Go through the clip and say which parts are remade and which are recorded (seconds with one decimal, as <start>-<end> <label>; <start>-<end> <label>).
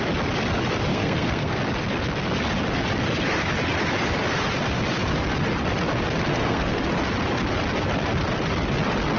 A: 0.0-0.9 recorded; 0.9-1.6 remade; 1.6-6.3 recorded; 6.3-6.8 remade; 6.8-9.2 recorded